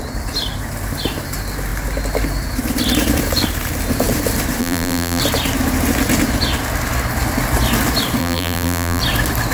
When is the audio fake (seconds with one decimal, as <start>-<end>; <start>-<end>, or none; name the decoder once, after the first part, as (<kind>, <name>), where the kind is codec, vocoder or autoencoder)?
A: 4.6-5.2 (vocoder, BigVGAN v2); 8.2-9.0